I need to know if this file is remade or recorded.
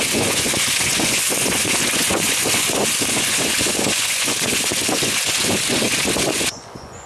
remade